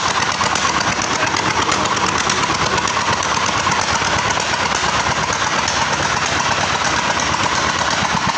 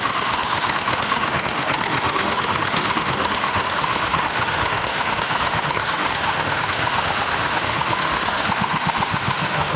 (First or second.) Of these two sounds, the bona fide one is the first